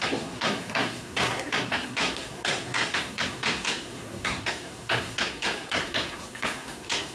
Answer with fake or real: fake